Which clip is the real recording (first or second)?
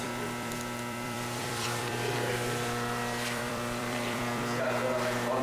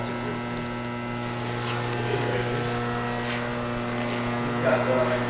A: second